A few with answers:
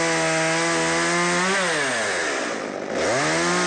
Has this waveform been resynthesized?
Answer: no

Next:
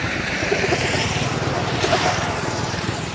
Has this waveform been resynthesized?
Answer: yes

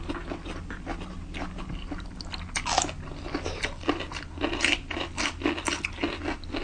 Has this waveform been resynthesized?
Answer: no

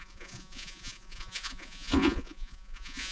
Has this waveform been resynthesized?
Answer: yes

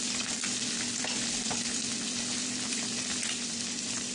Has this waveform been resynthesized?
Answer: no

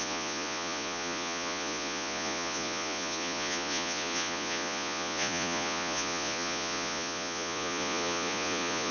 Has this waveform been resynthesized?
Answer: yes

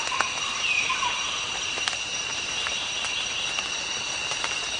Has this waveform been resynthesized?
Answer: no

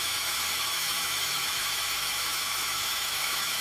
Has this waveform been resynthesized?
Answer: yes